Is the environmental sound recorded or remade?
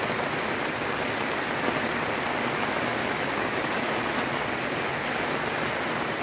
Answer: recorded